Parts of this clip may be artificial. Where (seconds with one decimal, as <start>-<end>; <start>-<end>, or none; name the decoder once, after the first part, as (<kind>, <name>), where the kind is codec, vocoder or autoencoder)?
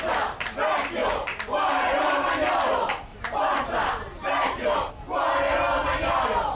1.0-2.3 (vocoder, BigVGAN v2); 3.1-4.9